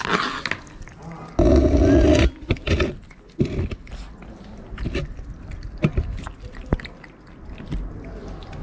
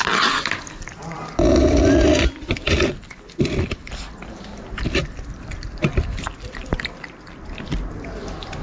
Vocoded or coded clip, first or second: second